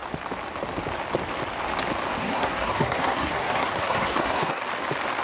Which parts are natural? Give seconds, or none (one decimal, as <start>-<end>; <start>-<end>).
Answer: 0.0-2.2; 4.6-5.2